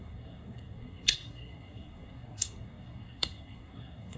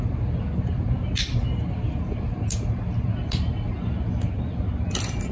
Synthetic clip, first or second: first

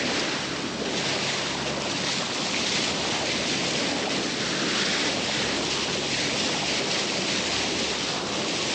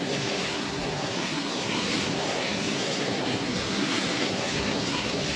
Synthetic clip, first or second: second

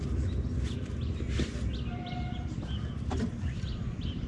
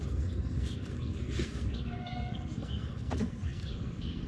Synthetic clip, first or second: second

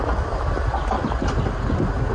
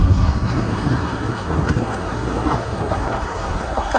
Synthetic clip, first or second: second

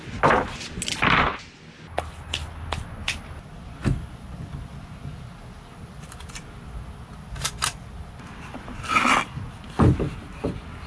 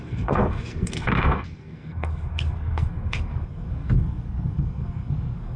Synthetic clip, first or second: second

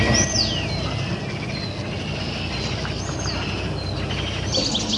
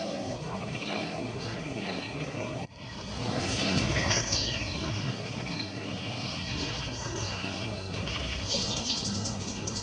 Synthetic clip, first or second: second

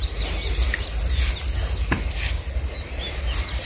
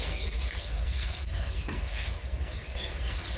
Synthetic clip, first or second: second